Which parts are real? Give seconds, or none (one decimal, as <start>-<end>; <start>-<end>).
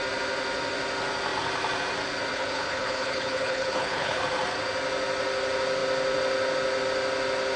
0.0-2.3; 4.2-7.6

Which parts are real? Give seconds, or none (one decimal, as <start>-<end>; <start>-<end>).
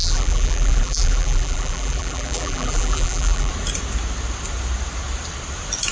3.5-5.9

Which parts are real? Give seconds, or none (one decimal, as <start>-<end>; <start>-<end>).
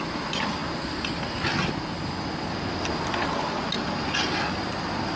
0.0-5.2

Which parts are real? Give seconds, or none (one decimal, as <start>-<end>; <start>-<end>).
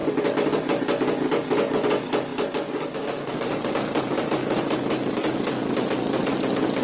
0.0-6.8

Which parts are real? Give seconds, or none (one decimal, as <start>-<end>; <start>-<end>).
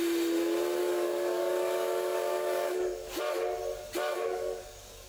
0.0-0.8; 3.2-4.1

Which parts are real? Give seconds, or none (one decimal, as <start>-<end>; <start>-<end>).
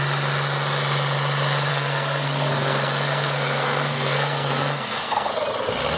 0.0-1.7; 5.3-6.0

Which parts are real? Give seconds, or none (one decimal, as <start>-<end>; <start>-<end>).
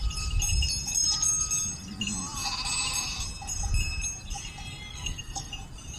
0.0-4.9; 5.5-6.0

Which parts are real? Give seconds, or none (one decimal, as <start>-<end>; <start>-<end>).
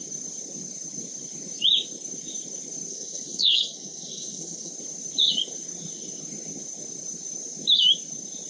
0.0-2.9; 4.7-8.5